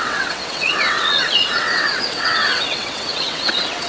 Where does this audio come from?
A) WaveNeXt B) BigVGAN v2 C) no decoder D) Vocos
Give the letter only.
A